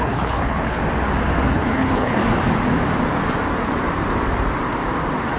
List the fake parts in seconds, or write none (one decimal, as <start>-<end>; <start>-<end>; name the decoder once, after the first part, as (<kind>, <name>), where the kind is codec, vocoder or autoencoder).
0.0-0.8 (codec, HILCodec); 1.5-2.2